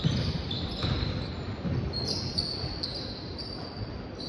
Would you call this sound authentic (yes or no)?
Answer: no